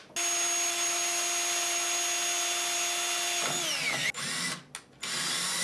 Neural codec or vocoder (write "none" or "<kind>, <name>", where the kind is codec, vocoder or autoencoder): none